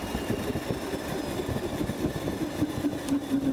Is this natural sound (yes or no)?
yes